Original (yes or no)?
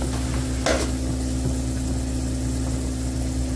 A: yes